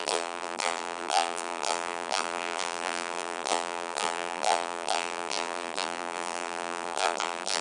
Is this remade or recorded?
remade